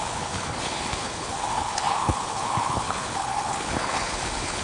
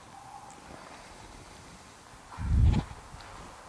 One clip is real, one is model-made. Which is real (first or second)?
second